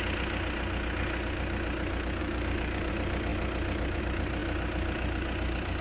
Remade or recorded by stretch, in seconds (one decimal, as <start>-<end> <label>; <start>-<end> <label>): 0.0-2.2 recorded; 2.2-2.9 remade; 2.9-5.8 recorded